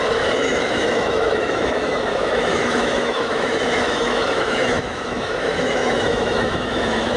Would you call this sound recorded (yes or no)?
no